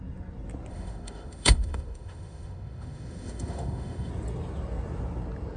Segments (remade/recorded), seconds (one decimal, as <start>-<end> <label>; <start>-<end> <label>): 0.0-0.7 recorded; 0.7-4.1 remade; 4.1-5.6 recorded